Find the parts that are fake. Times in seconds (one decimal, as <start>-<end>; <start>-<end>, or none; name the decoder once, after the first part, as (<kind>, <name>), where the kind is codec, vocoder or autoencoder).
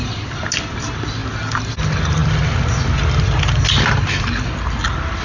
none